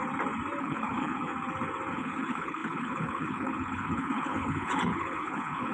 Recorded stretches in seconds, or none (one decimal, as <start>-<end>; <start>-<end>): 0.0-0.6; 1.3-1.9